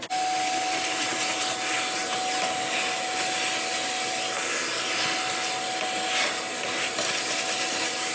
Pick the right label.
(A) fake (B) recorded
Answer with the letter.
B